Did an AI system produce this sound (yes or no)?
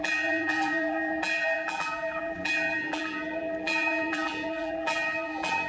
yes